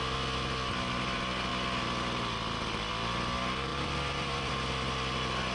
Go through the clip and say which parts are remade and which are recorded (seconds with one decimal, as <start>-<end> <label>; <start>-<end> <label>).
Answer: 0.0-3.7 recorded; 3.7-4.5 remade; 4.5-5.5 recorded